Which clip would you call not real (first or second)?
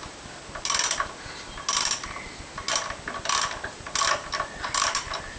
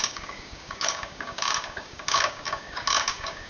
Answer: second